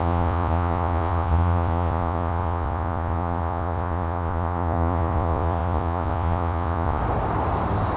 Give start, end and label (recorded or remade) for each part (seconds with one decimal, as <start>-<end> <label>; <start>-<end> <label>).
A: 0.0-7.0 remade; 7.0-8.0 recorded